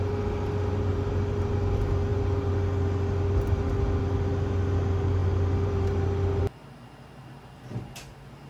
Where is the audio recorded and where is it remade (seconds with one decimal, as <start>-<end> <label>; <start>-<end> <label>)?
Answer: 0.0-8.5 recorded